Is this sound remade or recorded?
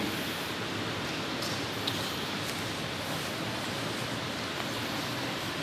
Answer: recorded